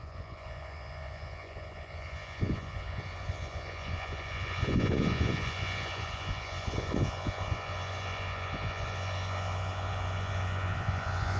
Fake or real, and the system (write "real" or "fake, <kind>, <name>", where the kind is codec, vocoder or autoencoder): fake, vocoder, Vocos